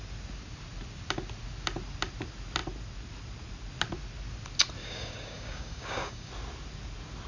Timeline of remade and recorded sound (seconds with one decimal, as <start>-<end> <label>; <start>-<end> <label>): 0.0-4.8 recorded; 4.8-6.3 remade; 6.3-7.3 recorded